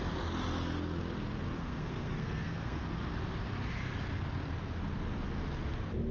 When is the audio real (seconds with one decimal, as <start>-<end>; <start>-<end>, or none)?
0.0-1.6; 2.8-6.1